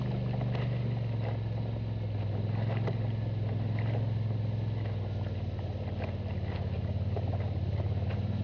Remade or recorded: recorded